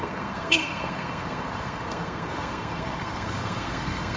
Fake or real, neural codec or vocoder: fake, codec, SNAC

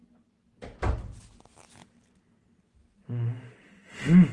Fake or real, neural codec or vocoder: real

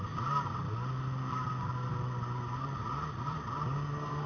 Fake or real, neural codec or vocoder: real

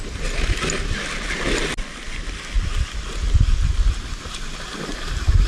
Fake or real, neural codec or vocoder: real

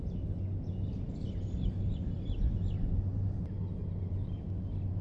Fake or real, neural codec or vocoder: real